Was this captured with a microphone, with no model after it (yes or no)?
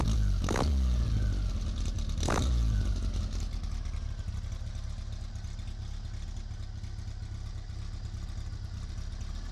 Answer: yes